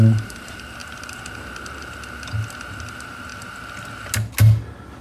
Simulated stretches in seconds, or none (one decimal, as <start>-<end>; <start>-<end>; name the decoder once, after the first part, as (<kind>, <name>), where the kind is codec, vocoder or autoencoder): none